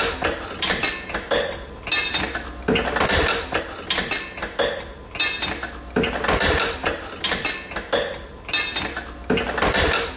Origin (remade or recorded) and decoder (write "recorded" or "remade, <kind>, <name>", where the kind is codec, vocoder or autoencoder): recorded